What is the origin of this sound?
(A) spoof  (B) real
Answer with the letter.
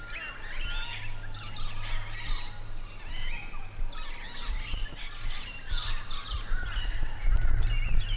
B